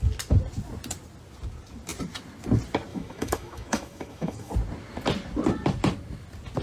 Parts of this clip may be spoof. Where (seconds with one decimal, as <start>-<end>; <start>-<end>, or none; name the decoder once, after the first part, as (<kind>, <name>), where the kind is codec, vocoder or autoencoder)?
2.9-4.5 (autoencoder, DAC-VAE)